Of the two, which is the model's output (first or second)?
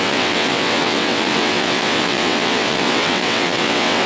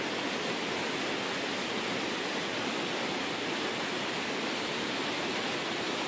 first